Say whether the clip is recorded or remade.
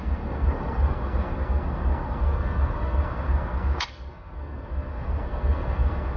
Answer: remade